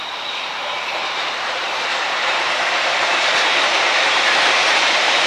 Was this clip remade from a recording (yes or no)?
yes